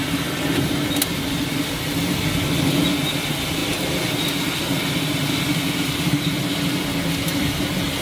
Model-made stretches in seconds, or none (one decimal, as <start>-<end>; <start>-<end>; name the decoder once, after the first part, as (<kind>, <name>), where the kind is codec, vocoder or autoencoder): 0.0-1.0 (vocoder, BigVGAN v2)